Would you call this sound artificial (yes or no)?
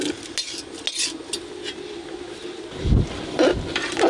no